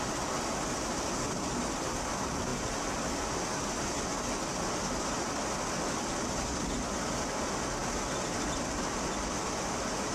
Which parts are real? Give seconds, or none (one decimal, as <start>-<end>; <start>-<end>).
0.0-10.1